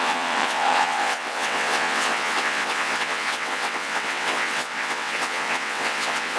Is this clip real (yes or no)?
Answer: no